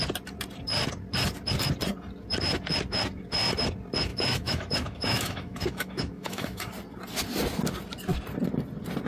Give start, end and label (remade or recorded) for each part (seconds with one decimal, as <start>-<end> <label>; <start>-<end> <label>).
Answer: 0.0-4.1 recorded; 4.1-6.7 remade; 6.7-9.1 recorded